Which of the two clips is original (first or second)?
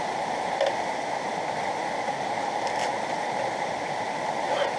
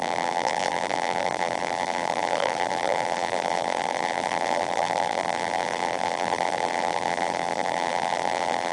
first